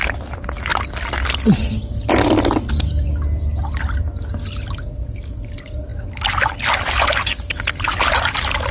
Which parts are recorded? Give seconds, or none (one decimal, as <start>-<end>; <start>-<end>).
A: 0.0-8.7